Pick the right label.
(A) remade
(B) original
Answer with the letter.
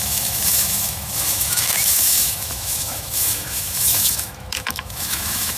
A